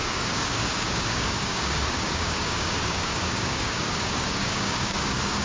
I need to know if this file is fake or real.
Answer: fake